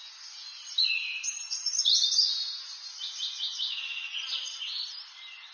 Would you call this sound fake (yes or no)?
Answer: no